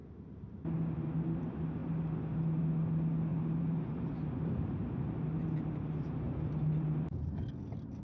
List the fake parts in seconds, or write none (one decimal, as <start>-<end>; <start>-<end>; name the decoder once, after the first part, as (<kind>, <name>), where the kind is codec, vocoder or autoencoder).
0.0-0.7 (vocoder, BigVGAN v2); 3.3-7.5